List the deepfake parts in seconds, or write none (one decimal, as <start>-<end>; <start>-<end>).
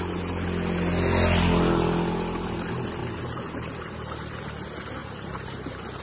3.0-4.4; 5.0-6.0